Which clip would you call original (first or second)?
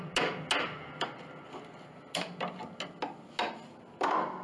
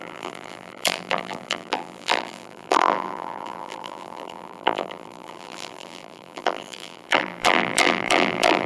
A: first